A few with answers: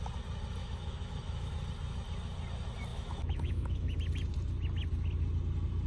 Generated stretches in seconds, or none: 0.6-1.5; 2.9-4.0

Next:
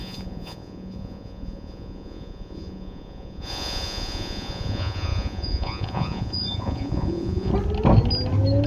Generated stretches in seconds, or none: 0.0-7.5

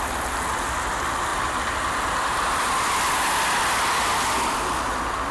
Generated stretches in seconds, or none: none

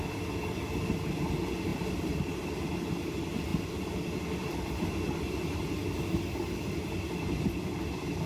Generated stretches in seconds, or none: 1.7-2.2